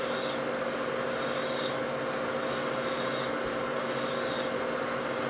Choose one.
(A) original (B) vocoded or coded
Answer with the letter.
A